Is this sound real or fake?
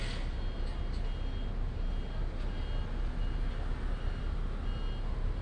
real